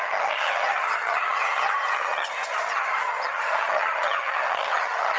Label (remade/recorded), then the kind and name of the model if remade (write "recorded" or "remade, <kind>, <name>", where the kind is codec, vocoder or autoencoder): remade, vocoder, HiFi-GAN